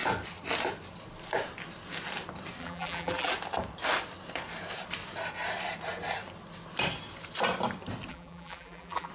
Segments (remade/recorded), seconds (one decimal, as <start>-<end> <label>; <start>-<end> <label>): 0.0-2.6 recorded; 2.6-3.3 remade; 3.3-8.1 recorded; 8.1-9.1 remade